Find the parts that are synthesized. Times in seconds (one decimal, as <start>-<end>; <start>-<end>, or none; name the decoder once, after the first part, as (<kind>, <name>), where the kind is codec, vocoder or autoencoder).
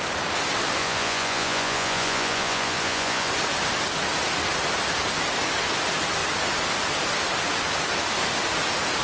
0.8-3.3 (vocoder, Vocos)